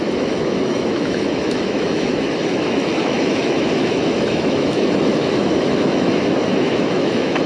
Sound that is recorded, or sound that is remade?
remade